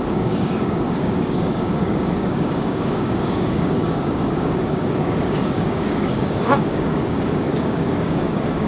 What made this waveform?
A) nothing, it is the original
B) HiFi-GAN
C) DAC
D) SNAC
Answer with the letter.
C